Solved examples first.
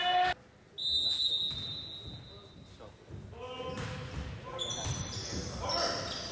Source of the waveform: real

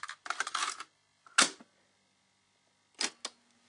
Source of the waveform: real